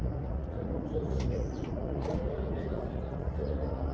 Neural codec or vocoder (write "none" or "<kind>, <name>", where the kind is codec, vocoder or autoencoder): vocoder, Vocos